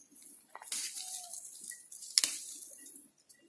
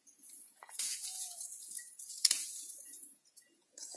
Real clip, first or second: first